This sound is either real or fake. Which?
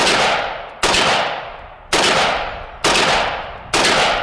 real